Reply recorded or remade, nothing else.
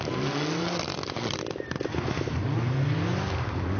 recorded